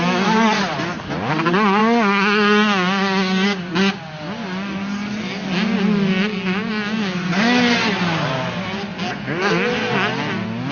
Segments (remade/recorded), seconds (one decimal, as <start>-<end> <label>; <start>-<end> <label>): 0.0-10.7 recorded